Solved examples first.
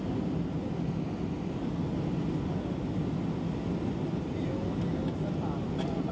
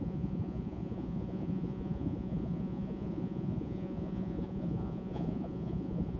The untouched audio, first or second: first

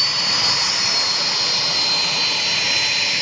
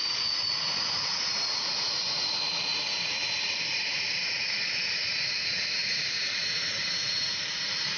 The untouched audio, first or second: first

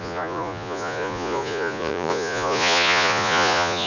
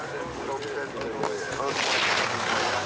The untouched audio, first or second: second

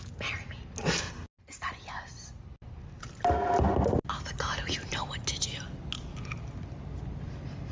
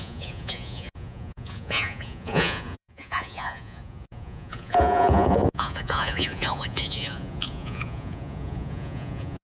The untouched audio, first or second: first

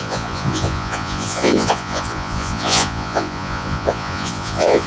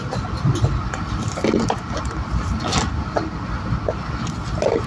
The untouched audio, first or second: second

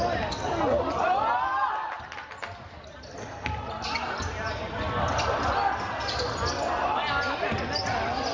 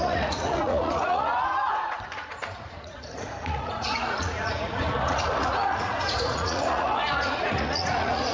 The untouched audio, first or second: first